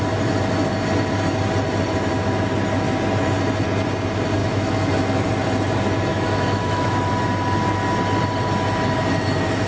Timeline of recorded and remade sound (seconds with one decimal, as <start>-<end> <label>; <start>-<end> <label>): 0.0-4.4 recorded; 4.4-4.9 remade; 4.9-6.1 recorded; 6.1-7.1 remade; 7.1-9.7 recorded